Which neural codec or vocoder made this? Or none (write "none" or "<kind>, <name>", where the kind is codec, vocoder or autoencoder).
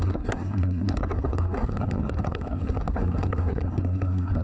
codec, SNAC